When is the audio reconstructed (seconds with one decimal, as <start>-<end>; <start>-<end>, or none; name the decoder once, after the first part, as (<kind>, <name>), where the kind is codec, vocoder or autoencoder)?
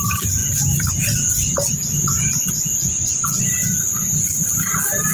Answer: none